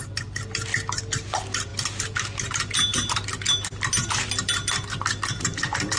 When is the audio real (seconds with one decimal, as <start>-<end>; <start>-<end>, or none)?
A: 0.0-6.0